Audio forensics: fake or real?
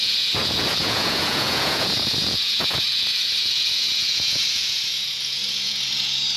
fake